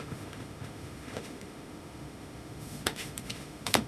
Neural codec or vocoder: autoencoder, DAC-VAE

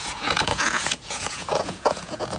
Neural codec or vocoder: vocoder, Vocos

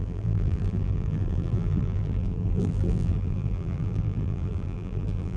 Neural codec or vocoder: vocoder, BigVGAN v2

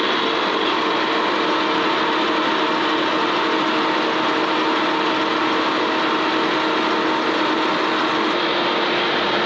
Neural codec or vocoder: none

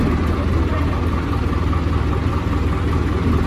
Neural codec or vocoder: none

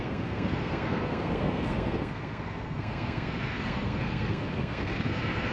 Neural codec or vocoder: codec, SNAC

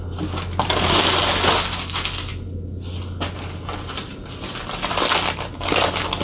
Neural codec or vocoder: none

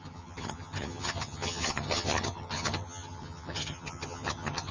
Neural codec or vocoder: vocoder, HiFi-GAN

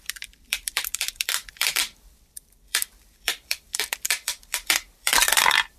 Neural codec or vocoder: vocoder, BigVGAN v2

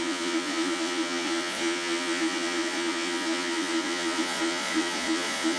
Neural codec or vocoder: vocoder, Vocos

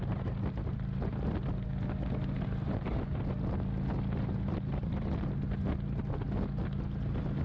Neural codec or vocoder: none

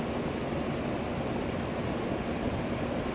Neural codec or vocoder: none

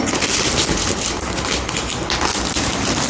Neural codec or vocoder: none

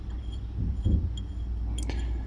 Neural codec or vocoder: none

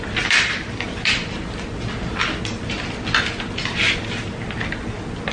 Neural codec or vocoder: none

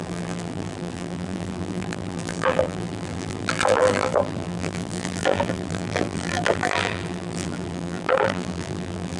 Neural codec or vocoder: vocoder, BigVGAN v2